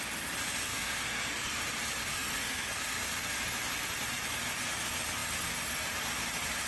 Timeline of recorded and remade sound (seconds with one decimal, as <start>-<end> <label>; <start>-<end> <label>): 0.0-0.7 recorded; 0.7-1.6 remade; 1.6-2.0 recorded; 2.0-3.4 remade; 3.4-6.7 recorded